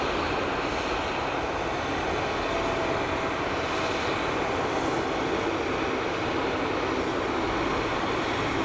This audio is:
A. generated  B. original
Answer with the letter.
B